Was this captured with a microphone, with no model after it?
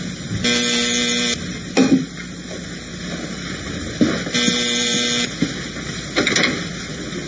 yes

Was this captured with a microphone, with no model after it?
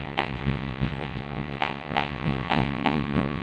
no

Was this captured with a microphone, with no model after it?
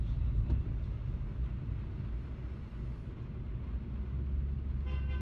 yes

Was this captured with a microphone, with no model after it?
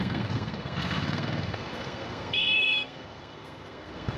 no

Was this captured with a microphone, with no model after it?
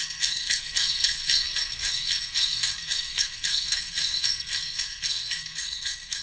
no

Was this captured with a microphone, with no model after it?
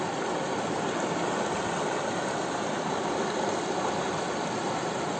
yes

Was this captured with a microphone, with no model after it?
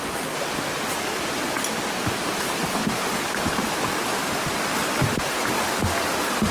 yes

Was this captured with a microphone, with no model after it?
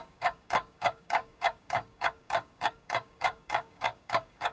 no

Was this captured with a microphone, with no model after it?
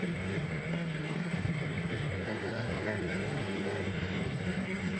no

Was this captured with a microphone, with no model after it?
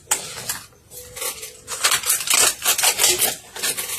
yes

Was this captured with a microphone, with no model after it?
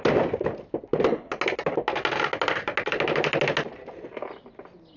yes